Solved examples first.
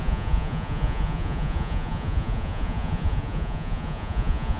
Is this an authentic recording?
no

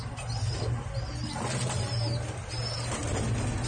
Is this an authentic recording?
yes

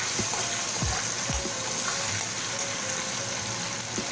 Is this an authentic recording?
yes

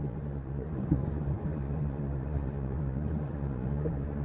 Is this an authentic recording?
no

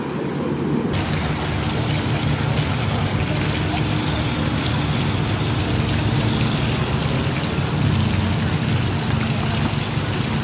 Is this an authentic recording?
yes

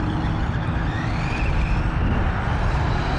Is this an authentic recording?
yes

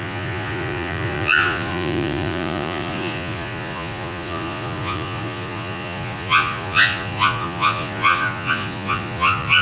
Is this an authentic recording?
no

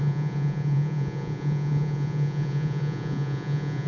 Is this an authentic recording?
no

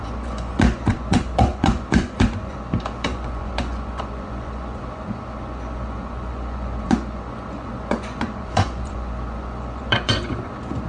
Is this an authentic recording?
no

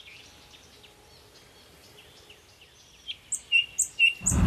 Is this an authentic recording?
yes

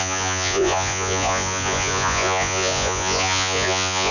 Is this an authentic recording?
no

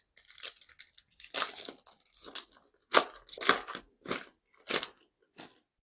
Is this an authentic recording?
yes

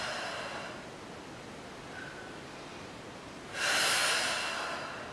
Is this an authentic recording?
yes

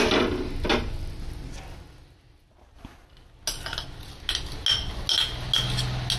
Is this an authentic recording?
yes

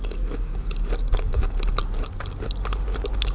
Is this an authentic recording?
yes